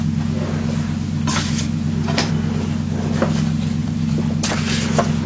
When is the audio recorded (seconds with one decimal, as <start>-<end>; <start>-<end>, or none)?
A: 0.0-1.3; 2.3-3.8; 4.5-5.3